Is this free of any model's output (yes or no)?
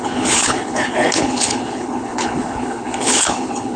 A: no